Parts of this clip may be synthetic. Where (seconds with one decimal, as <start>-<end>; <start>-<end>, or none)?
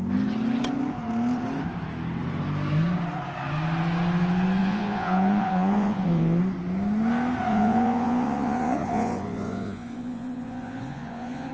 4.6-6.4; 7.5-11.5